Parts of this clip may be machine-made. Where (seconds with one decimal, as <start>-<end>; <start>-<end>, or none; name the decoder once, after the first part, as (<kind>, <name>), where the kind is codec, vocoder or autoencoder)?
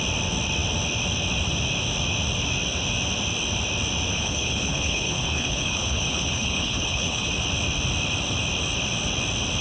4.1-7.3 (codec, HILCodec)